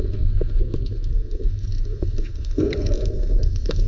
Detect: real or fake fake